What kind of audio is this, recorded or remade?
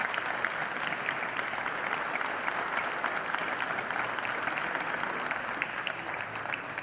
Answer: recorded